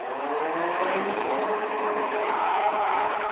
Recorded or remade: remade